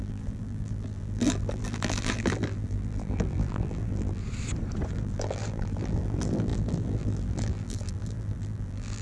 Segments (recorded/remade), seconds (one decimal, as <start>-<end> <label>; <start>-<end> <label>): 0.0-4.2 remade; 4.2-4.9 recorded; 4.9-9.0 remade